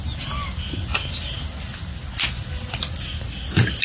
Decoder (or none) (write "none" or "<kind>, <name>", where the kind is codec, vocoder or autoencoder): none